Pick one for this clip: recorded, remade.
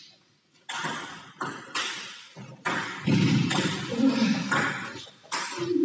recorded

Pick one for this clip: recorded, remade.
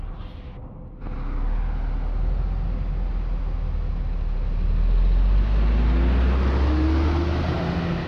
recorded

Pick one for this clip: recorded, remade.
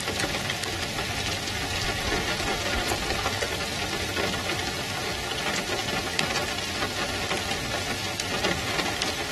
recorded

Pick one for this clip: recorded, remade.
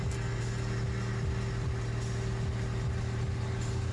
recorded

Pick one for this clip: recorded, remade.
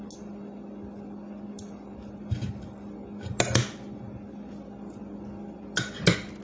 recorded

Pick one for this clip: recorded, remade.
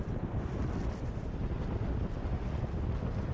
recorded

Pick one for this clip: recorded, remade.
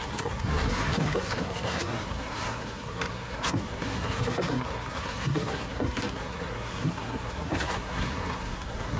remade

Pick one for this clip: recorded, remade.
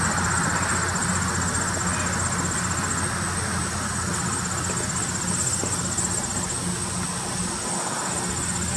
recorded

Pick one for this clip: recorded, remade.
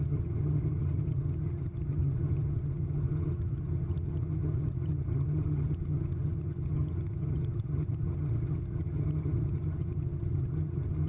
remade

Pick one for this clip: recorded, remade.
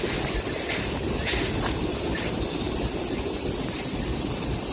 recorded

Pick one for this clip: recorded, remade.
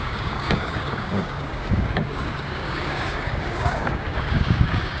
remade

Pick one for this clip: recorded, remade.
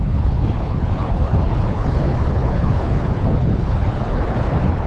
remade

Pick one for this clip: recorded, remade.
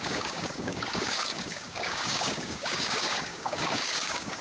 remade